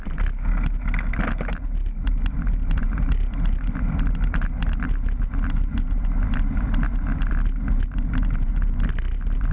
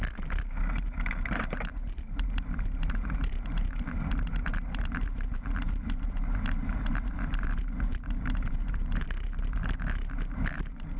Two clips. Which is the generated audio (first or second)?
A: second